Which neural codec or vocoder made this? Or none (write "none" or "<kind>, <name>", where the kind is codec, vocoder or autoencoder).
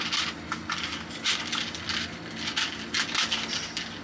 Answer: none